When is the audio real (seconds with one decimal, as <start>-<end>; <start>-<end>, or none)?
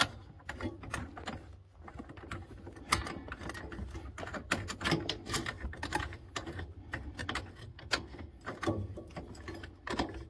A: 0.0-7.7; 8.3-10.3